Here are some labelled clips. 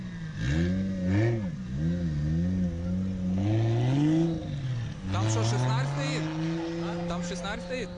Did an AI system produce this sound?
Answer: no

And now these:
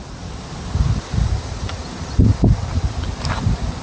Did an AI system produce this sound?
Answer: no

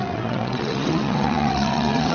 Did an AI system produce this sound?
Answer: yes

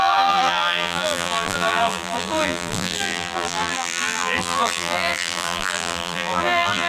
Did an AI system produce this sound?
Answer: yes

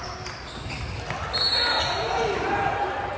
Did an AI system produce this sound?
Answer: no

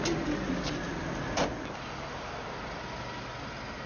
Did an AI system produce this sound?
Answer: no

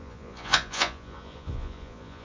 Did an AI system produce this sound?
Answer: yes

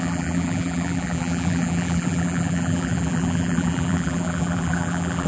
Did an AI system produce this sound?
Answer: yes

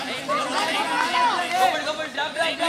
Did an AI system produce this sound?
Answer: no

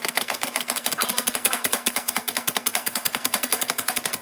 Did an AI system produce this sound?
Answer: yes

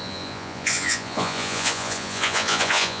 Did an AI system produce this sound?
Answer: yes